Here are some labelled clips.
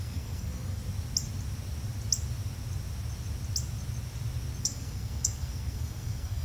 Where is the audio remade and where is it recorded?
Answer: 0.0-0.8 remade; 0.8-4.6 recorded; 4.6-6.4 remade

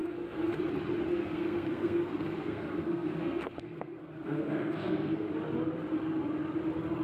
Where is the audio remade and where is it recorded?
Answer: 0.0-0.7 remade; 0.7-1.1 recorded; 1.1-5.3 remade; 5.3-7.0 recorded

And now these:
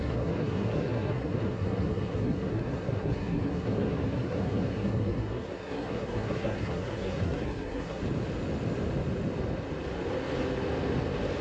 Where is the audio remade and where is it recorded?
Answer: 0.0-8.0 remade; 8.0-11.4 recorded

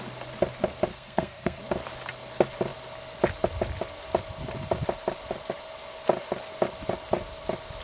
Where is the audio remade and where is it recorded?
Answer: 0.0-0.9 recorded; 0.9-1.6 remade; 1.6-7.8 recorded